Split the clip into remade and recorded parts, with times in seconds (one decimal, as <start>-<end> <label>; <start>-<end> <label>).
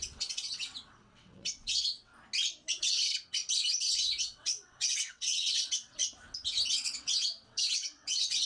0.0-2.1 remade; 2.1-2.8 recorded; 2.8-3.4 remade; 3.4-3.9 recorded; 3.9-6.0 remade; 6.0-6.7 recorded; 6.7-8.5 remade